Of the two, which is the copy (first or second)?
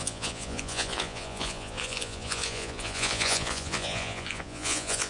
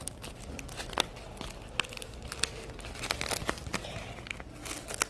first